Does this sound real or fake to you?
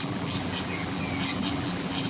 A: fake